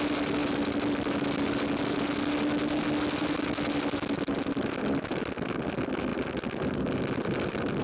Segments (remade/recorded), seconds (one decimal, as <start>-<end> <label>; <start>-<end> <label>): 0.0-7.8 recorded